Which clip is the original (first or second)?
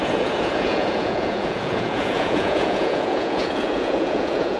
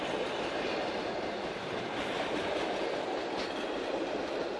second